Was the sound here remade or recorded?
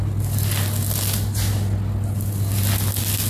recorded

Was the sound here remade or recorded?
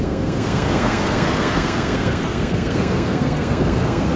remade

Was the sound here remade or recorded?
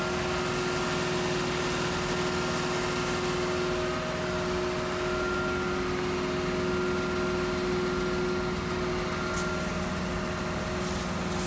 recorded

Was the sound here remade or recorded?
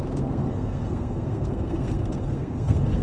remade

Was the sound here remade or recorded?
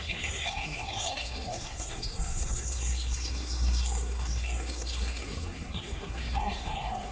remade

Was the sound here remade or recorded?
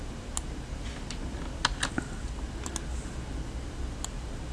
recorded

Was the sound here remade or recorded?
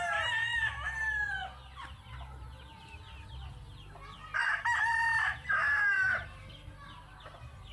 recorded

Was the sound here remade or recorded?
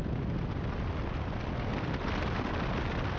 recorded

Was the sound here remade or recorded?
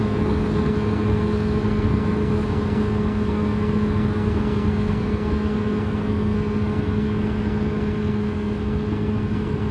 remade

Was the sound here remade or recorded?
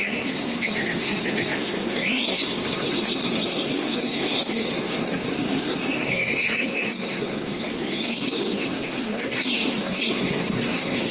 remade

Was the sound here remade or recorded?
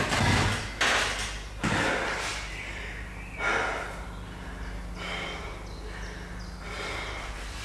recorded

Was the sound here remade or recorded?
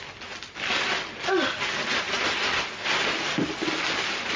recorded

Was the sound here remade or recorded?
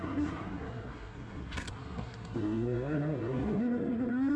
remade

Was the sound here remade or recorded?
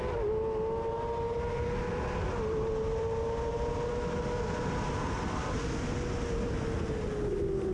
recorded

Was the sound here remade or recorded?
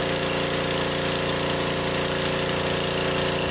recorded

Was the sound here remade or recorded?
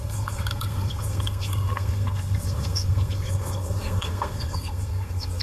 remade